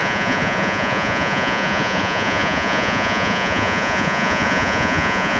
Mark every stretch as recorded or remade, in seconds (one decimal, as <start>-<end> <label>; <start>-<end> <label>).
0.0-5.4 remade